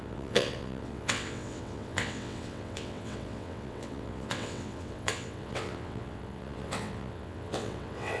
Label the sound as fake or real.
fake